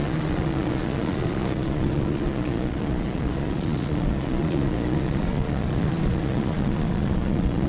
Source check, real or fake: fake